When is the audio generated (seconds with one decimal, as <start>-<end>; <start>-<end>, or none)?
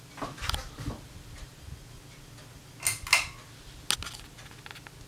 none